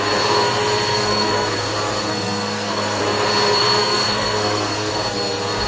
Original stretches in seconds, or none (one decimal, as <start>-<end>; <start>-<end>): 0.0-0.9; 1.5-2.1; 3.0-3.6; 4.9-5.7